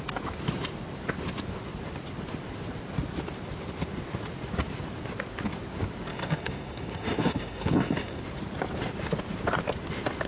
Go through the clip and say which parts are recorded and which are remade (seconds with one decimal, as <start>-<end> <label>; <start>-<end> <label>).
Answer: 0.0-6.1 recorded; 6.1-8.2 remade; 8.2-10.3 recorded